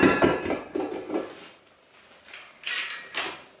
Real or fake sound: real